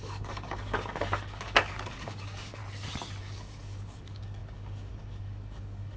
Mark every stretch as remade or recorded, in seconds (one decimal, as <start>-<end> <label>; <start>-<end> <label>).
0.0-2.6 remade; 2.6-3.2 recorded; 3.2-6.0 remade